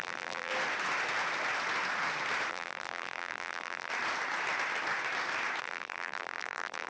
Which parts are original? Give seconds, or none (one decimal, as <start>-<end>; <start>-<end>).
0.5-2.5; 3.9-5.6